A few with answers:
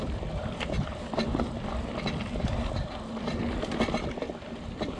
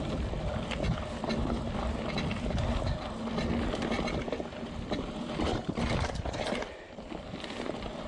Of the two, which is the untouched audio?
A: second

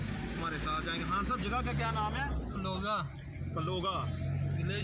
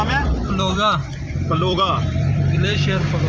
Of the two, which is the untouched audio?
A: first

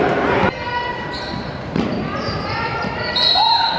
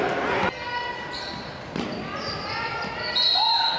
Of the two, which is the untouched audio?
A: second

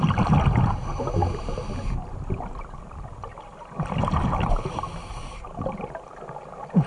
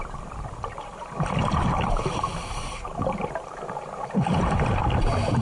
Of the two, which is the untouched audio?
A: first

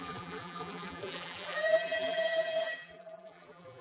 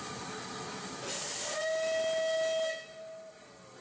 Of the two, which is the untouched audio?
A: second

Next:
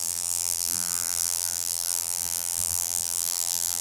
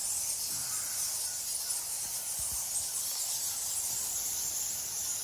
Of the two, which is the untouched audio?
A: second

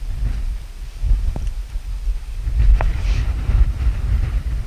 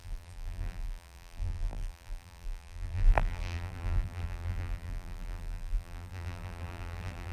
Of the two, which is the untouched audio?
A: first